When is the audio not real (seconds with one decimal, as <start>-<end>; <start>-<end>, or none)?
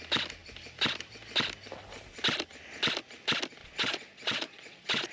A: 3.6-5.1